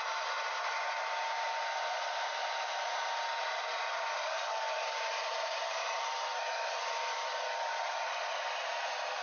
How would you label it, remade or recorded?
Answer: recorded